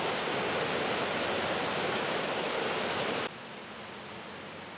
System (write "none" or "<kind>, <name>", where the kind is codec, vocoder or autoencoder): none